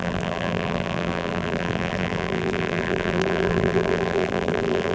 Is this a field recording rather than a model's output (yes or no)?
no